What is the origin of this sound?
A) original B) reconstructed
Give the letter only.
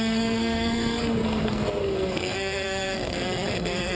B